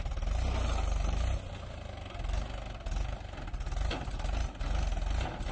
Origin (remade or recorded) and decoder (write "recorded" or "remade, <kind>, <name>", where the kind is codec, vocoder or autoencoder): recorded